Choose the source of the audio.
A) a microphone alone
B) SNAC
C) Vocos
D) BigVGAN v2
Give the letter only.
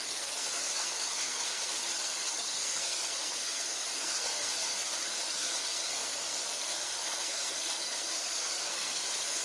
B